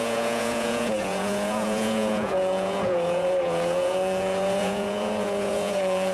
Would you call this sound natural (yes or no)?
no